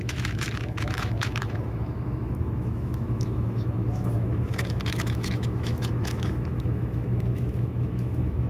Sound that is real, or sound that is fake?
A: fake